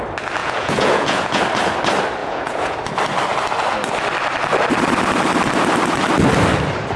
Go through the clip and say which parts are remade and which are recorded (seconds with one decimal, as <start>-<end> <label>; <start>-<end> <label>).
0.0-0.4 recorded; 0.4-1.4 remade; 1.4-2.2 recorded; 2.2-2.8 remade; 2.8-7.0 recorded